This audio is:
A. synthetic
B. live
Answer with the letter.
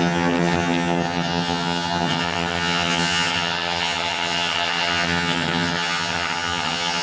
A